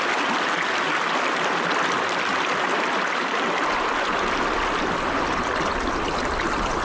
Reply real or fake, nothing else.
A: real